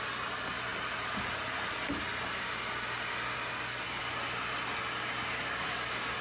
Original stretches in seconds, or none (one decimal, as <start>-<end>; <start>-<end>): 0.0-6.2

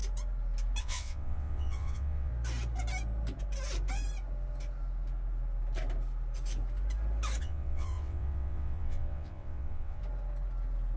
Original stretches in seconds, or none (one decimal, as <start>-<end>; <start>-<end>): 0.0-0.8; 2.3-7.4; 10.0-11.0

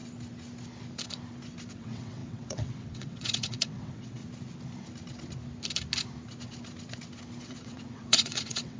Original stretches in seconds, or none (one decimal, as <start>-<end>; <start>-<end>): 0.0-1.7; 4.2-7.4

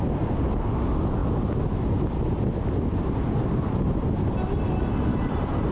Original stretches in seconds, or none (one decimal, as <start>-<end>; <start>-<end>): 0.0-5.7

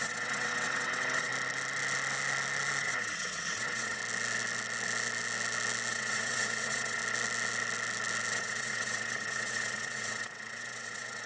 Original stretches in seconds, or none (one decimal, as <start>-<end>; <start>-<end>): 1.3-2.8; 4.0-5.9; 7.0-8.3